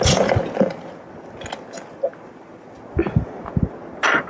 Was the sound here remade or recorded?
recorded